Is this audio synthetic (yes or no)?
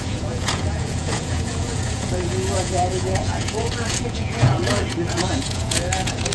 yes